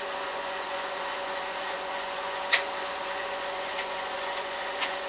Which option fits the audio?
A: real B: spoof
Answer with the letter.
B